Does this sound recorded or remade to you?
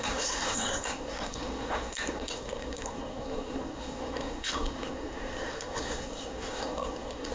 remade